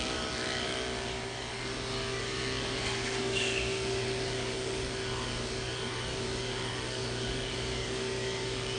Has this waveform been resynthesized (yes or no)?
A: yes